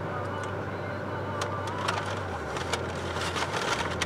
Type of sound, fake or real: real